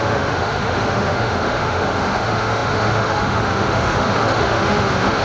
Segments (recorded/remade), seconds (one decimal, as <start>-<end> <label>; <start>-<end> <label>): 0.0-5.2 remade

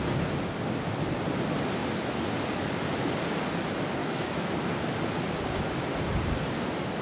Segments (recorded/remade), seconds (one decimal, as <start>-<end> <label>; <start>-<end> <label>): 0.0-4.0 recorded; 4.0-4.5 remade; 4.5-7.0 recorded

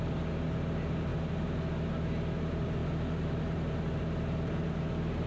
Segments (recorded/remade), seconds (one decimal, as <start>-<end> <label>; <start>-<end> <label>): 0.0-5.3 recorded

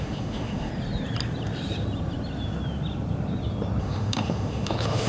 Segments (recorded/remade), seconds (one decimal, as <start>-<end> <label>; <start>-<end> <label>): 0.0-0.7 remade; 0.7-3.8 recorded; 3.8-5.1 remade

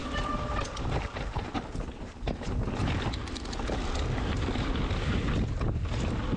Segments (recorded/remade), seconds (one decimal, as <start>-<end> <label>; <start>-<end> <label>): 0.0-6.4 recorded

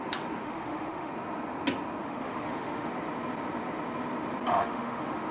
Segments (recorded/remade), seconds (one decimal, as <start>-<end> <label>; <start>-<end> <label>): 0.0-0.4 recorded; 0.4-1.1 remade; 1.1-2.0 recorded; 2.0-2.9 remade; 2.9-4.5 recorded; 4.5-5.3 remade

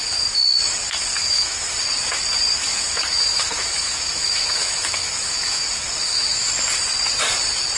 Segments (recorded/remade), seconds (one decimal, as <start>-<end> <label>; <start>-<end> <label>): 0.0-1.2 recorded; 1.2-1.7 remade; 1.7-2.6 recorded; 2.6-6.5 remade; 6.5-7.8 recorded

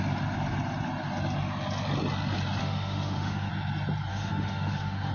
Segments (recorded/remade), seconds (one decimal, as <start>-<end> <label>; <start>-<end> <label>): 0.0-2.6 recorded; 2.6-3.5 remade; 3.5-4.1 recorded; 4.1-5.1 remade